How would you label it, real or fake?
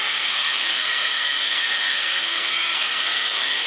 fake